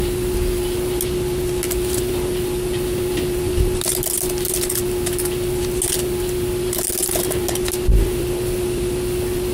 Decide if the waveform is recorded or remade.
recorded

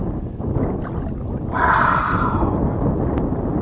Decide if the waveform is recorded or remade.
recorded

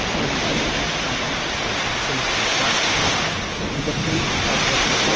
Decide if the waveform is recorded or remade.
recorded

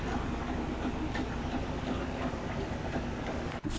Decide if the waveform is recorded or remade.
remade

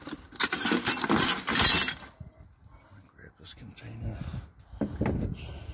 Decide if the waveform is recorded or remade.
recorded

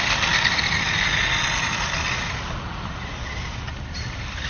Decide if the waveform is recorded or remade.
recorded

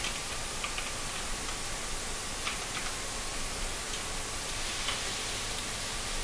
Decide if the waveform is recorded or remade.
recorded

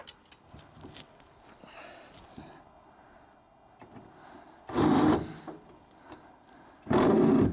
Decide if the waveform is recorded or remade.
recorded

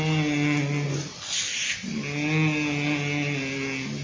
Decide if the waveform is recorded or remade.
recorded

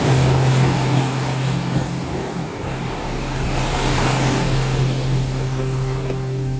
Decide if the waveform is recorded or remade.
remade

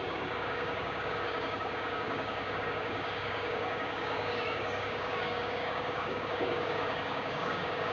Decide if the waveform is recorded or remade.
remade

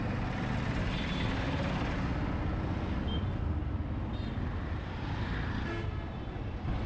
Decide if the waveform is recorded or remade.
recorded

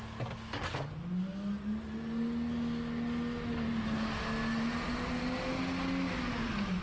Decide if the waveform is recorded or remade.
recorded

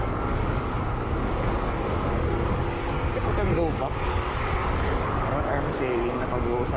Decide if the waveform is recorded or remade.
remade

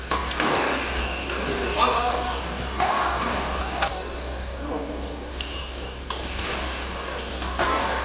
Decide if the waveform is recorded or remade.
remade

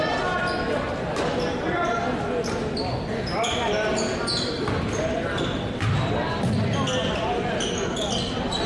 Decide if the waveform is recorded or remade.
recorded